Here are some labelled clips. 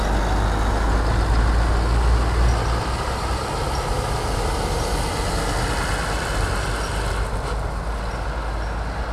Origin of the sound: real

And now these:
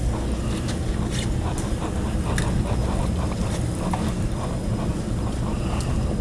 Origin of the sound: real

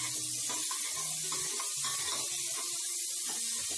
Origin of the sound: real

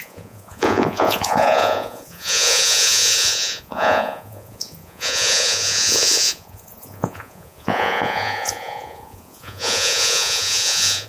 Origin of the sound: fake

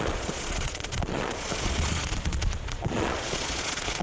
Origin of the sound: fake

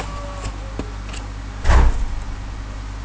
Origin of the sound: real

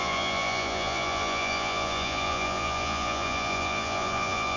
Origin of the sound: fake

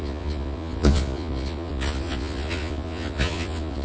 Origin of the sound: fake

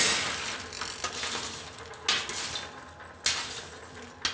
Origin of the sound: real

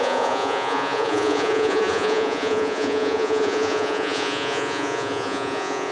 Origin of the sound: fake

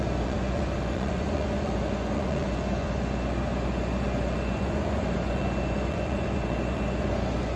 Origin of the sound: fake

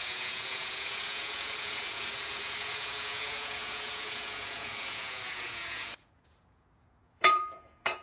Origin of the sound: fake